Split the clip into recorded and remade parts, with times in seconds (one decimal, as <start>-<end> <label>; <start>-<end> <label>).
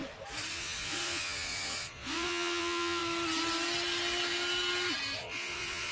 0.0-0.5 recorded; 0.5-3.0 remade; 3.0-5.2 recorded; 5.2-5.9 remade